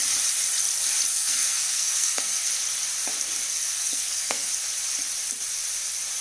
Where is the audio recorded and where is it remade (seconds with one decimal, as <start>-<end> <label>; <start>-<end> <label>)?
0.0-1.1 recorded; 1.1-2.5 remade; 2.5-3.5 recorded; 3.5-4.5 remade; 4.5-6.2 recorded